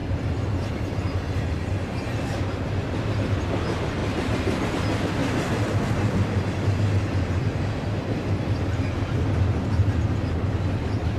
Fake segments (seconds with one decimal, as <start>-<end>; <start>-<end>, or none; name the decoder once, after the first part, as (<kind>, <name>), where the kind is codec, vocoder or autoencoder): 1.7-2.5 (vocoder, BigVGAN v2); 4.0-4.7; 5.2-5.7